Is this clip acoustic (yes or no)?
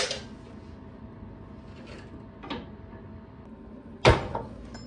yes